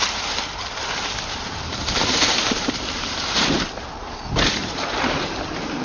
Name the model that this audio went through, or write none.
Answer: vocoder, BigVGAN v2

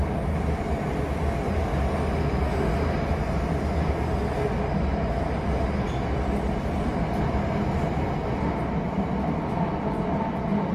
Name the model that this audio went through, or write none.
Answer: none